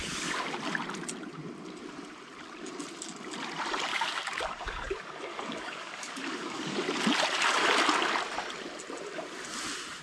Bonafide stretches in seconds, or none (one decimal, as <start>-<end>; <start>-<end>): 0.0-3.9; 6.8-10.0